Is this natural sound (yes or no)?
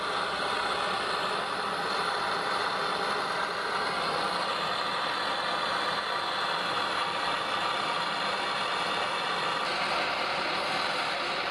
yes